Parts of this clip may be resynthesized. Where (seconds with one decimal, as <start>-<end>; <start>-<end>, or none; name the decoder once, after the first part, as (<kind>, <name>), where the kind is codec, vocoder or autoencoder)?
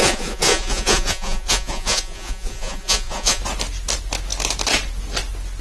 0.0-3.4 (vocoder, Vocos)